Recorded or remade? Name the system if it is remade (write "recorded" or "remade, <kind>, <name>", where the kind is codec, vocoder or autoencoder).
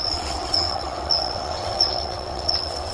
remade, vocoder, WaveNeXt